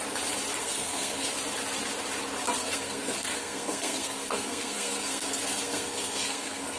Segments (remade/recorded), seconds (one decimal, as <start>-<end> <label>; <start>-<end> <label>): 0.0-0.6 recorded; 0.6-1.3 remade; 1.3-2.6 recorded; 2.6-6.8 remade